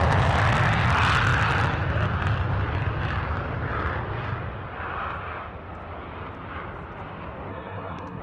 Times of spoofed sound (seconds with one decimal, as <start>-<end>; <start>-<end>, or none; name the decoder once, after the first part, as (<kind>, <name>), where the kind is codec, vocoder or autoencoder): 7.5-8.2 (codec, SNAC)

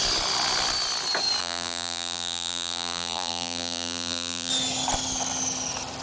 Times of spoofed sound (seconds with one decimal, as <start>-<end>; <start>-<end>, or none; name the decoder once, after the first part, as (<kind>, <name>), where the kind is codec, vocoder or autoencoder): 1.4-4.5 (vocoder, BigVGAN v2)

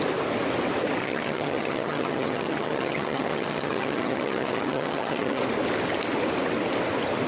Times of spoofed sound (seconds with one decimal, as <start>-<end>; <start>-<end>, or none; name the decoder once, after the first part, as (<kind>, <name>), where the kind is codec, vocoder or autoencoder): 1.0-5.4 (vocoder, HiFi-GAN)

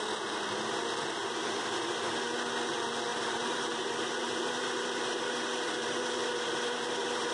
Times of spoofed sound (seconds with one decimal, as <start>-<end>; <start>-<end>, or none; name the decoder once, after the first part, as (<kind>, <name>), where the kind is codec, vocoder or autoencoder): 3.1-7.3 (vocoder, BigVGAN v2)

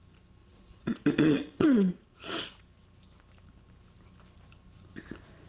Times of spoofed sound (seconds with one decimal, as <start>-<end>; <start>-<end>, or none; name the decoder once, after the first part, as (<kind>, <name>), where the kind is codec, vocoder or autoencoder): 0.4-2.6 (vocoder, Vocos)